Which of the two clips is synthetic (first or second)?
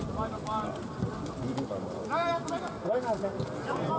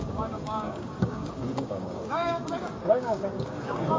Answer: second